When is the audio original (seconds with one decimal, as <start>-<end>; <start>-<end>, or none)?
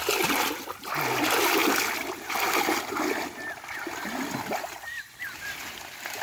0.0-6.2